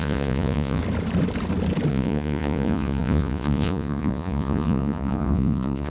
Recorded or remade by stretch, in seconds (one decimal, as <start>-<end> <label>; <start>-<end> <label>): 0.0-0.8 remade; 0.8-1.9 recorded; 1.9-5.9 remade